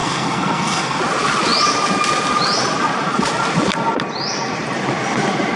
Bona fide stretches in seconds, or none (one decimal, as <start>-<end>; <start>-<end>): 1.0-5.6